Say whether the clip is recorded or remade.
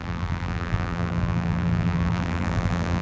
remade